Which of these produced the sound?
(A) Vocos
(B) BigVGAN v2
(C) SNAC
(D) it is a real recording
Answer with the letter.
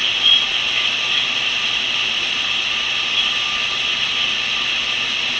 D